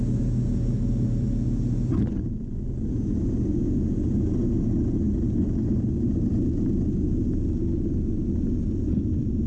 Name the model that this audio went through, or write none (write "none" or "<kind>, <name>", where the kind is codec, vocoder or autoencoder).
none